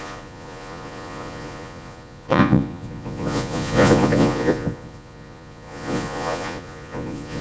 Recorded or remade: remade